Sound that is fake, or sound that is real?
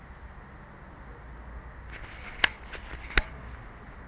real